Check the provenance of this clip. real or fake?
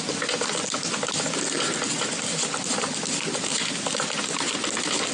real